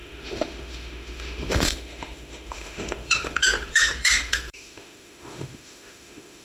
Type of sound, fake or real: fake